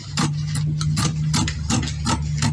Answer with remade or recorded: recorded